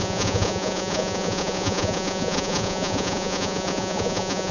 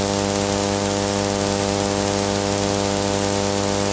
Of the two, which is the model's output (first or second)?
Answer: first